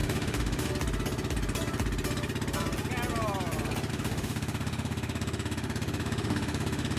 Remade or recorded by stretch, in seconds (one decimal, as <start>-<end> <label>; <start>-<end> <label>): 0.0-0.7 remade; 0.7-3.9 recorded; 3.9-7.0 remade